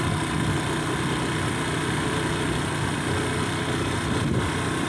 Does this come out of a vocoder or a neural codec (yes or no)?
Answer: no